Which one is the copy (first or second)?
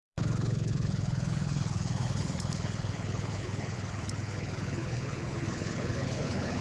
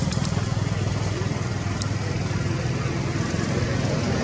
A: first